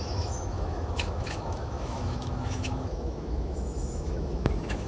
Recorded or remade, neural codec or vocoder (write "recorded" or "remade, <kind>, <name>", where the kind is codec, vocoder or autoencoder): remade, autoencoder, DAC-VAE